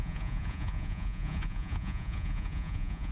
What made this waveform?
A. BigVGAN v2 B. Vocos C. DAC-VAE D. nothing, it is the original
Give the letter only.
B